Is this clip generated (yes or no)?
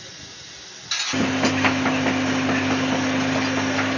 no